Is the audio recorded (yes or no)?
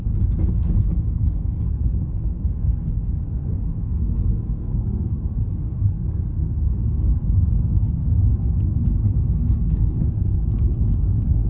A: no